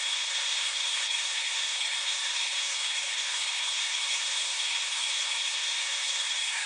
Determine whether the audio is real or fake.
fake